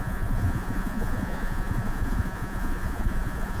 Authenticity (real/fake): fake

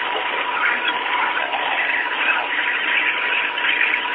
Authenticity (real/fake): fake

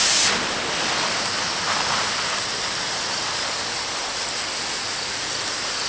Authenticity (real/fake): real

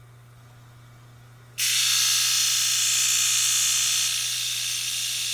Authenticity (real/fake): real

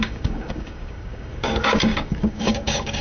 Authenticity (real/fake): fake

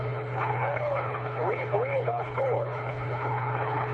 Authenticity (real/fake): fake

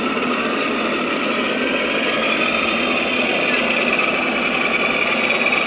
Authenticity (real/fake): real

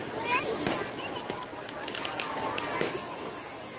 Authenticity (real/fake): real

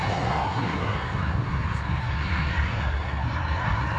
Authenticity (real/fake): fake